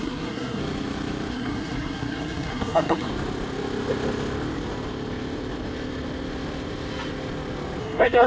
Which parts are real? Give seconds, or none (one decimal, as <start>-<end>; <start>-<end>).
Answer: 0.6-1.3; 3.1-7.8